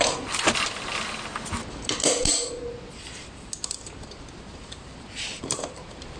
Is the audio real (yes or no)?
yes